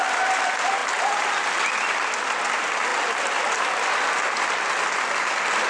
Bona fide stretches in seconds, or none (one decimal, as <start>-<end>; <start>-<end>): 0.0-5.7